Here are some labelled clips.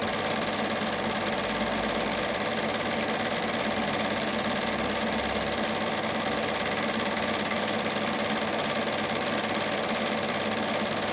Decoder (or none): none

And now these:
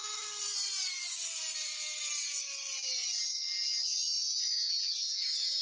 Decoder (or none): vocoder, BigVGAN v2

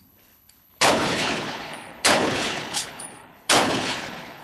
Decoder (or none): codec, HILCodec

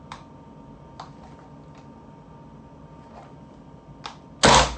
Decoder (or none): none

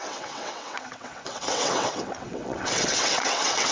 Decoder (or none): vocoder, WaveNeXt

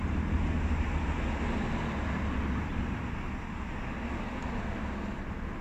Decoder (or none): none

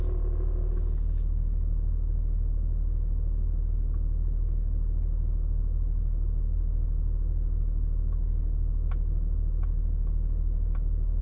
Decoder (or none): none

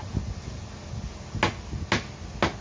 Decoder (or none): none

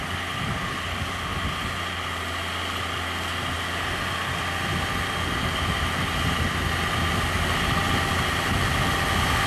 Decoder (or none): none